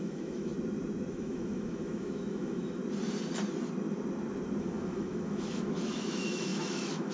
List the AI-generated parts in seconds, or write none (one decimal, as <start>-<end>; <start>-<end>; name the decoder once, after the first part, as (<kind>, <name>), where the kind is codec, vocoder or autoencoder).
0.0-0.5 (autoencoder, DAC-VAE); 1.1-2.8; 4.6-7.1